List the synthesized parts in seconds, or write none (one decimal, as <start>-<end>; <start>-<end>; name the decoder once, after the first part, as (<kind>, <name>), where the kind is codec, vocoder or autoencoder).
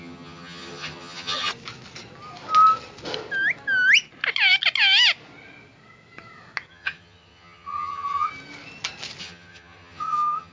0.0-1.5 (vocoder, HiFi-GAN); 6.7-8.3; 9.2-10.5